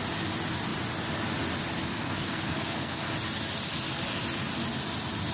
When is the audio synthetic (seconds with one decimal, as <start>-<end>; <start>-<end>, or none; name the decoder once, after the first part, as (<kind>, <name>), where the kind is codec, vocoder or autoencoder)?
1.9-3.1 (codec, SNAC)

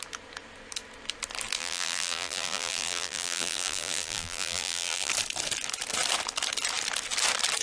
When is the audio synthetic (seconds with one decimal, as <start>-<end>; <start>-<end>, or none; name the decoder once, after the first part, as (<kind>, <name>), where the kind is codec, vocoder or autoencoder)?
1.6-5.1 (vocoder, BigVGAN v2)

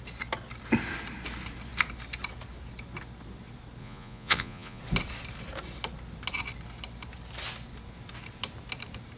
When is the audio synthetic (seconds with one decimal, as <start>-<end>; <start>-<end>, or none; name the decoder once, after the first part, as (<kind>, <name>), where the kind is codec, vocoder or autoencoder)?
3.8-4.8 (vocoder, Vocos)

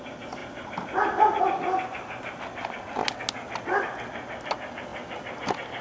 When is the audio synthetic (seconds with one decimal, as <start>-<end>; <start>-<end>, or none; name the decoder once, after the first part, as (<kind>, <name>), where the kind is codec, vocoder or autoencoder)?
none

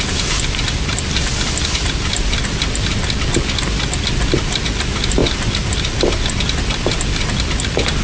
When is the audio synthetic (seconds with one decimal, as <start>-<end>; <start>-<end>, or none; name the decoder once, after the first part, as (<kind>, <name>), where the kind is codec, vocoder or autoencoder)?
none

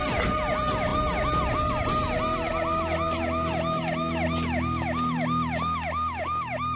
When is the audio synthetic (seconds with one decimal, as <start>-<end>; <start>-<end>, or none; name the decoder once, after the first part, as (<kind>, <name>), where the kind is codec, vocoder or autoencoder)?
none

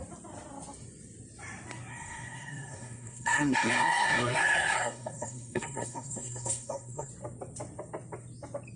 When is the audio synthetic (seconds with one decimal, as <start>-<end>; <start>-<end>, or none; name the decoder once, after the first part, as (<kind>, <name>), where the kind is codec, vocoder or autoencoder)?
1.9-7.1 (codec, SNAC)